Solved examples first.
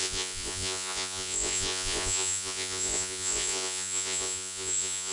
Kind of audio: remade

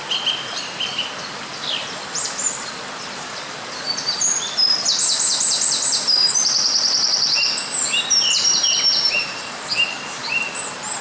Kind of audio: remade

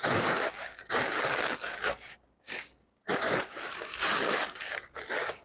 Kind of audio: remade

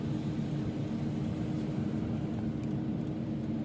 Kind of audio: recorded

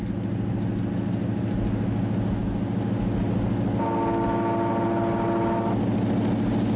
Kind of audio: recorded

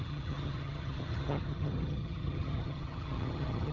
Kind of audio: remade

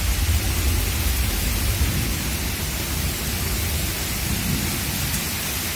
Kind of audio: recorded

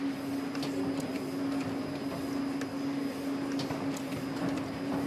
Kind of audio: recorded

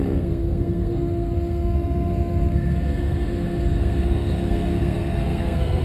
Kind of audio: remade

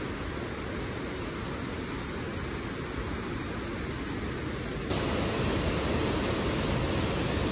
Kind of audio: recorded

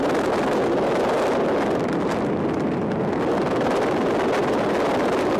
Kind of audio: recorded